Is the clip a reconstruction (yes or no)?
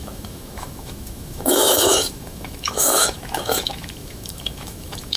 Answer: yes